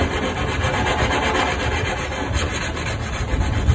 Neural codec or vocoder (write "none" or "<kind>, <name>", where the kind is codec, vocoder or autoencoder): none